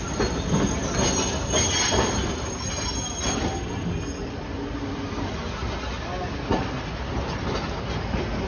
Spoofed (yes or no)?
no